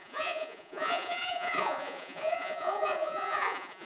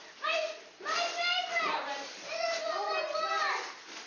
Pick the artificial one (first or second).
first